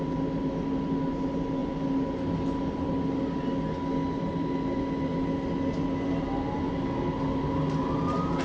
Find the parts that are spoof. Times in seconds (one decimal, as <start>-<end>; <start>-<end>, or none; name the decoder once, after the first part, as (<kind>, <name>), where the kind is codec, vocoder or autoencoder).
none